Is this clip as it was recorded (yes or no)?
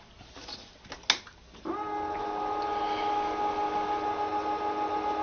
yes